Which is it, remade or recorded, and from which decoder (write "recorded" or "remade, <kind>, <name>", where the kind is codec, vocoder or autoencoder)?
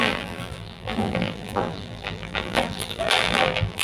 remade, vocoder, BigVGAN v2